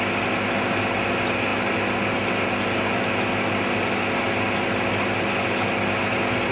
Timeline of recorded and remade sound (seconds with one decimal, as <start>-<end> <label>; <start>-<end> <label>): 0.0-6.5 recorded